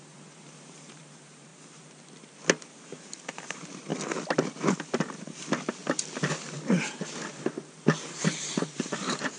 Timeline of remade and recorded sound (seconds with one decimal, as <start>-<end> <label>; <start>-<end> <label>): 0.0-1.5 remade; 1.5-2.7 recorded; 2.7-3.9 remade; 3.9-8.0 recorded; 8.0-9.4 remade